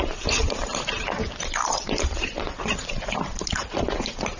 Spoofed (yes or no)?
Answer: yes